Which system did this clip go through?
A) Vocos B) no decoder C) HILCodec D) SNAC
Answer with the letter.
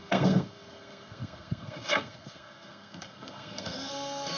D